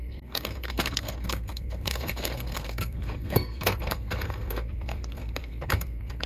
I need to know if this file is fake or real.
fake